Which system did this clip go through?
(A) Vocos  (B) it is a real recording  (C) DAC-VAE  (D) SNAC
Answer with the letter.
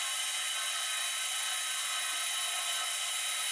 B